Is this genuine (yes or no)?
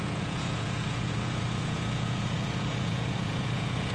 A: no